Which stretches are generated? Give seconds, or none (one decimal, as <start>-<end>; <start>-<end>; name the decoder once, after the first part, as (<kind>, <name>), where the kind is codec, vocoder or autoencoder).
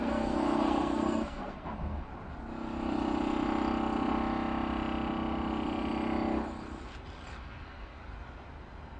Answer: 0.0-2.1 (codec, SNAC); 7.4-8.0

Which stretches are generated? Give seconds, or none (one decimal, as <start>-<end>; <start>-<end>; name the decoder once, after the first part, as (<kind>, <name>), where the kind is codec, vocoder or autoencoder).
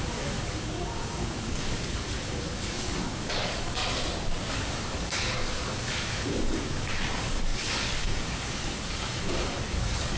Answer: 0.0-3.8 (codec, DAC); 4.5-10.2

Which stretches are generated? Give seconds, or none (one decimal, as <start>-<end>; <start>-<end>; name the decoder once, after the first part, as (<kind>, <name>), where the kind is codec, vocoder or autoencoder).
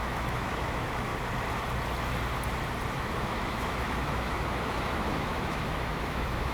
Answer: 0.0-1.1 (autoencoder, DAC-VAE); 2.9-6.5